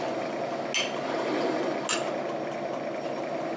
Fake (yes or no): no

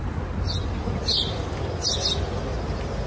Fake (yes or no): no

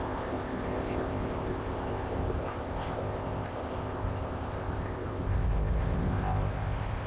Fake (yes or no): yes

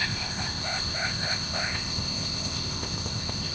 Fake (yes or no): yes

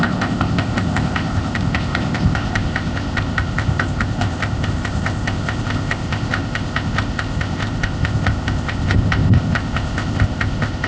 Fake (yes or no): yes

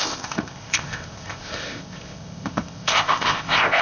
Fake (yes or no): yes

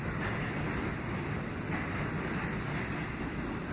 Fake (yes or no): no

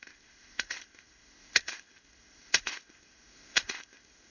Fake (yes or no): yes